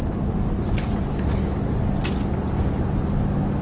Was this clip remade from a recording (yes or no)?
no